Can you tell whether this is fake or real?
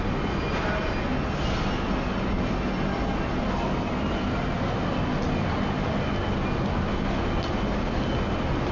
real